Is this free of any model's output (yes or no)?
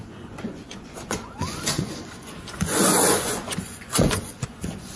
no